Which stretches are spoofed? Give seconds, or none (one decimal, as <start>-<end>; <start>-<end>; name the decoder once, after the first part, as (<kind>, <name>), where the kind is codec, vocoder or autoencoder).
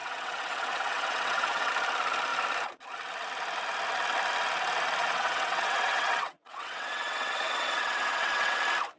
0.0-1.7 (vocoder, WaveNeXt); 5.0-8.6